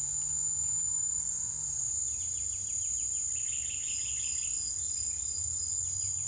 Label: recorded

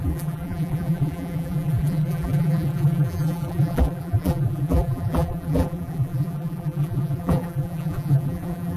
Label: remade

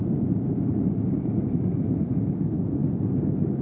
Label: recorded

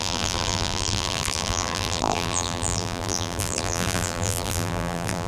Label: remade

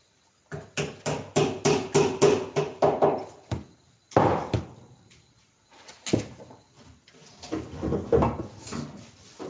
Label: recorded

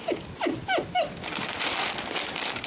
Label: recorded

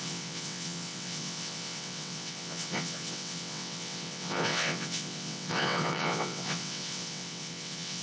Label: remade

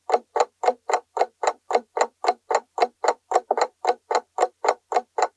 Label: remade